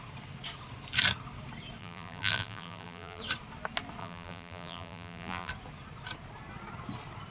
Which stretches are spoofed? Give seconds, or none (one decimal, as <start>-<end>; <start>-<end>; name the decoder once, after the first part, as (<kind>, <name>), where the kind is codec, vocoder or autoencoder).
1.8-3.2 (vocoder, BigVGAN v2); 4.0-5.5